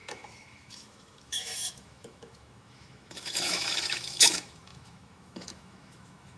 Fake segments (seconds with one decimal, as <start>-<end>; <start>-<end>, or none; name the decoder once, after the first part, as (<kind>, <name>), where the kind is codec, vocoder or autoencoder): 0.0-6.4 (autoencoder, DAC-VAE)